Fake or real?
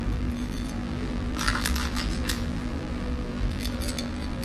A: fake